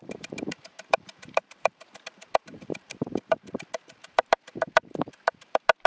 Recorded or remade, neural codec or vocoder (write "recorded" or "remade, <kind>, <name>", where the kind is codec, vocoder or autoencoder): remade, vocoder, BigVGAN v2